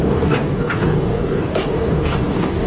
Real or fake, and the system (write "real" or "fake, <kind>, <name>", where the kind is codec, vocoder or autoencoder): fake, codec, DAC